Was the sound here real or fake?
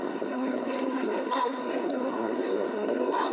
fake